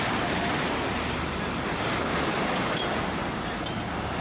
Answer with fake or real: real